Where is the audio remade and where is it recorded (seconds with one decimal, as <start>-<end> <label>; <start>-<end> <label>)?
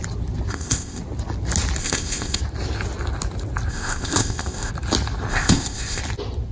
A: 0.0-0.5 recorded; 0.5-1.0 remade; 1.0-1.8 recorded; 1.8-2.4 remade; 2.4-3.7 recorded; 3.7-4.7 remade; 4.7-5.3 recorded; 5.3-6.0 remade; 6.0-6.5 recorded